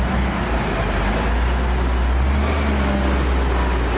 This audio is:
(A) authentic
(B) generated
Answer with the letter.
A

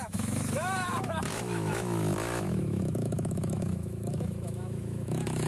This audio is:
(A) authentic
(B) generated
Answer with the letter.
B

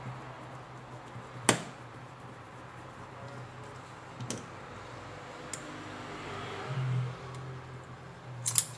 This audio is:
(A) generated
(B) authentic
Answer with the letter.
B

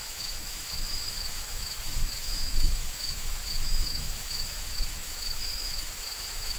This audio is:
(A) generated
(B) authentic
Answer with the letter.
A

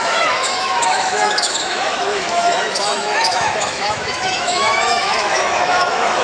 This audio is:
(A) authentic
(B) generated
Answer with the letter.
B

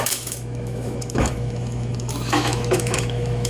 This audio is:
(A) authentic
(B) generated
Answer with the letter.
B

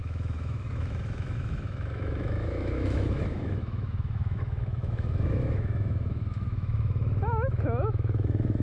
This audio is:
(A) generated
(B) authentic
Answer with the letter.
A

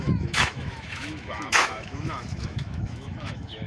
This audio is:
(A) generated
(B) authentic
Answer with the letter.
A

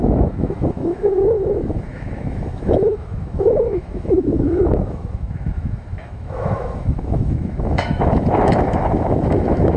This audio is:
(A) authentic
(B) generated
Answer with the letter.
B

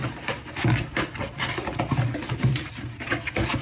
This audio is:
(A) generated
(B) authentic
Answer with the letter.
B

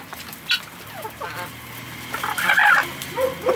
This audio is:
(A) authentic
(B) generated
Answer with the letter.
A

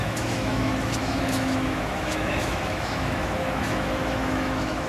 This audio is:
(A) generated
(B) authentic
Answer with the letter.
A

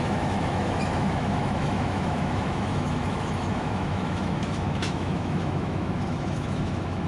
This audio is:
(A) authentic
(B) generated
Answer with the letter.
B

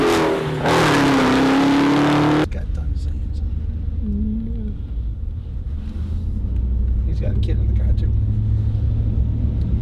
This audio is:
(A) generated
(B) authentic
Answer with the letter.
B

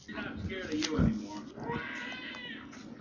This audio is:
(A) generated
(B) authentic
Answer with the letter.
B